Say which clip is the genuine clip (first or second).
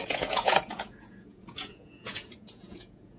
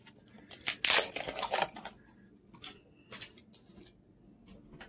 second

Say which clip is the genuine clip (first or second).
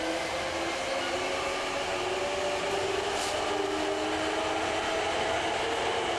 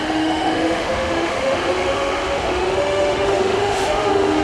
first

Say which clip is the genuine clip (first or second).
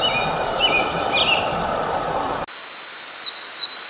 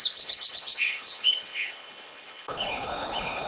first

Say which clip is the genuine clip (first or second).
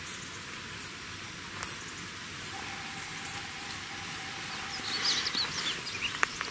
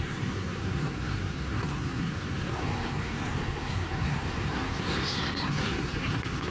first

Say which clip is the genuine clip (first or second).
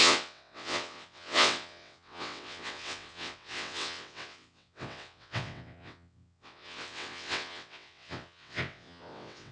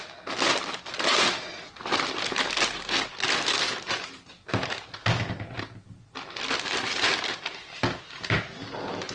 second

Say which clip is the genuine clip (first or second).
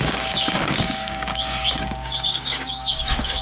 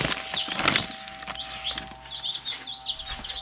second